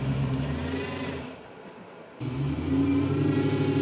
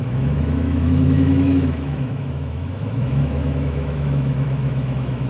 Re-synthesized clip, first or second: second